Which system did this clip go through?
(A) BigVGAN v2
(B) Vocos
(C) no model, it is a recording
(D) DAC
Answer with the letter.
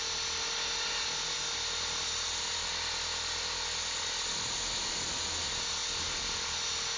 C